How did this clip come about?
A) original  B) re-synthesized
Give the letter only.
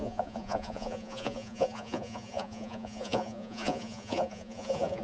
B